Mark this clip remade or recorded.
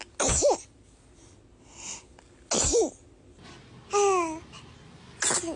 recorded